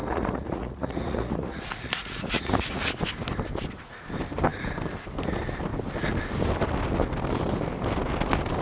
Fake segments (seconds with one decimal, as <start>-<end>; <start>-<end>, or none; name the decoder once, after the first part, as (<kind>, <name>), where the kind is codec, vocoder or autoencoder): 0.0-2.9 (vocoder, Vocos)